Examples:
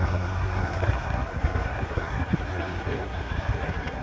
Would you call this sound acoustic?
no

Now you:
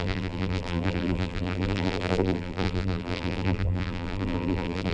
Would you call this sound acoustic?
no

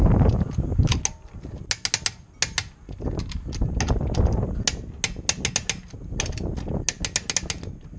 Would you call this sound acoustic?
yes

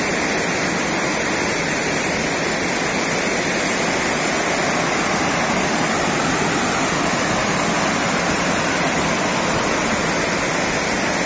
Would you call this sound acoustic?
yes